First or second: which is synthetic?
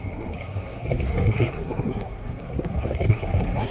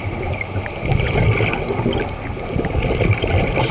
first